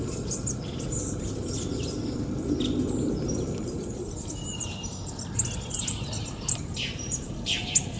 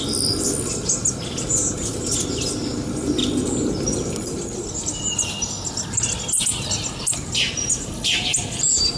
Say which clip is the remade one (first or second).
first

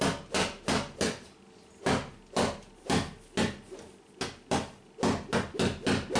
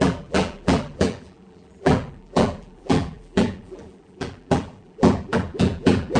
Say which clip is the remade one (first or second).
second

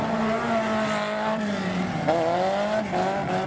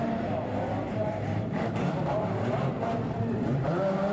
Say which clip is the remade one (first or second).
second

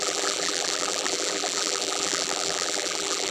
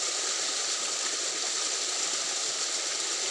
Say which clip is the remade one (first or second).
first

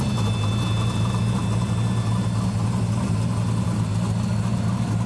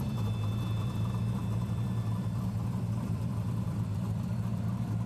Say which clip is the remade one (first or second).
second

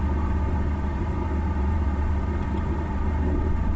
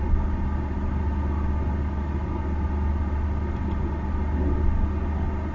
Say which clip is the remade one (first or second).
first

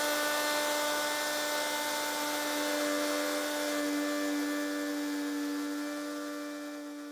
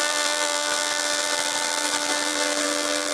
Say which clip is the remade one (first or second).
second